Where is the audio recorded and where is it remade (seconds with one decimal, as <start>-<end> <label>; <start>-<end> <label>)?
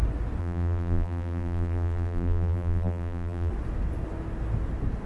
0.0-0.4 recorded; 0.4-3.5 remade; 3.5-5.1 recorded